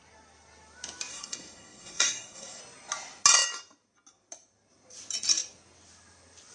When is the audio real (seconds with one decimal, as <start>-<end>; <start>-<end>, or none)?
0.0-1.1; 2.6-6.5